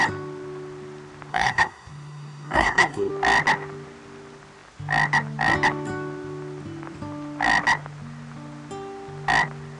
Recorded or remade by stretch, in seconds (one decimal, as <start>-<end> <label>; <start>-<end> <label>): 0.0-1.3 recorded; 1.3-3.1 remade; 3.1-9.8 recorded